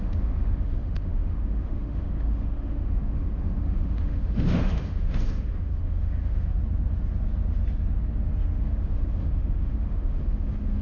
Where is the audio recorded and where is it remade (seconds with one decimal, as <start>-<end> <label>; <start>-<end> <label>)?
0.0-6.6 remade; 6.6-8.6 recorded; 8.6-10.8 remade